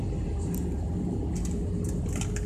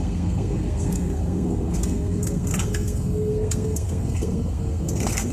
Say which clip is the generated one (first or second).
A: second